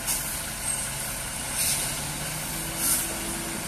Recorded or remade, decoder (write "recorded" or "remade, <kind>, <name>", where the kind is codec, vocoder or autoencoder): recorded